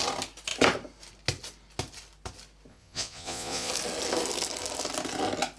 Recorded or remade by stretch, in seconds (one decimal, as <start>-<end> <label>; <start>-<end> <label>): 0.0-2.7 recorded; 2.7-3.7 remade; 3.7-5.6 recorded